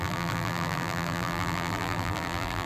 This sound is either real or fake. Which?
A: fake